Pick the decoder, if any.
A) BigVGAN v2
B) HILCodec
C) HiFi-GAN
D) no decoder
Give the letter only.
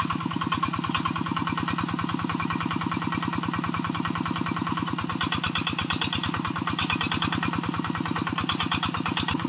D